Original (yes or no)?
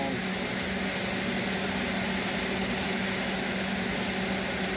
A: yes